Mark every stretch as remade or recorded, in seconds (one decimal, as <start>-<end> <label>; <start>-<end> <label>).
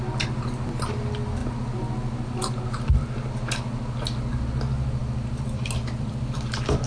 0.0-5.0 recorded; 5.0-6.4 remade; 6.4-6.9 recorded